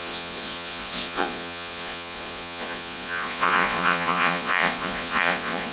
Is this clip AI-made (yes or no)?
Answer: yes